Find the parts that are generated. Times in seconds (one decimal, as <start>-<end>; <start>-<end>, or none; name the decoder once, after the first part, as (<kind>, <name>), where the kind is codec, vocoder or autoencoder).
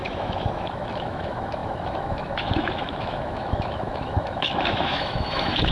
0.0-5.7 (autoencoder, DAC-VAE)